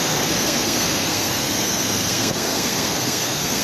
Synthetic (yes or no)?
yes